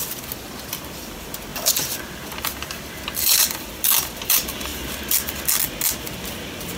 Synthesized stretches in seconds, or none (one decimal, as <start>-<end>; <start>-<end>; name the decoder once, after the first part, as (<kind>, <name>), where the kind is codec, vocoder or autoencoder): 0.0-4.7 (vocoder, BigVGAN v2)